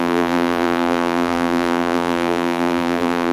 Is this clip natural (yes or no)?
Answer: no